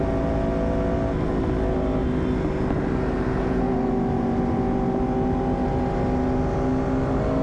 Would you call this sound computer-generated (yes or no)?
no